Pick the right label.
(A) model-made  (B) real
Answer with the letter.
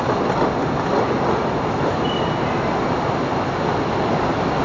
B